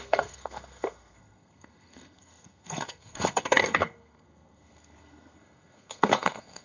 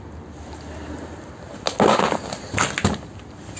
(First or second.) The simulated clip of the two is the first